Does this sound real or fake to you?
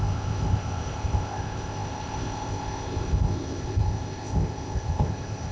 fake